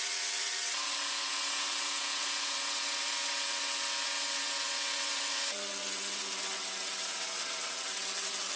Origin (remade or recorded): remade